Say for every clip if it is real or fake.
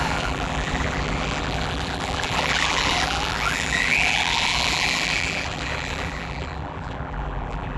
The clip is fake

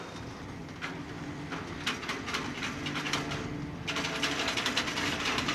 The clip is real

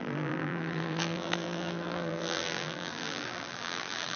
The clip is fake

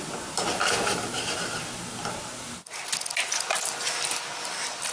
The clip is real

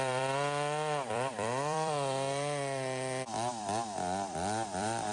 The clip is fake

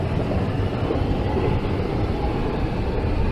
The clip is fake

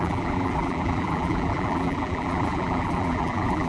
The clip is fake